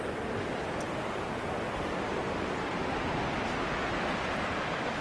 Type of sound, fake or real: real